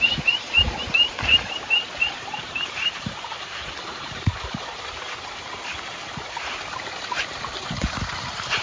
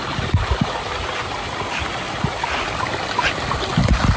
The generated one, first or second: first